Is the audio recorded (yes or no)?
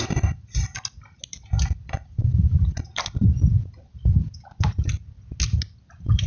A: yes